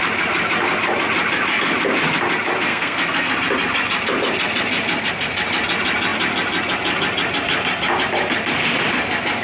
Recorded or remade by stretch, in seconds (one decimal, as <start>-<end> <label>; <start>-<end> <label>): 0.0-2.7 recorded; 2.7-3.3 remade; 3.3-9.4 recorded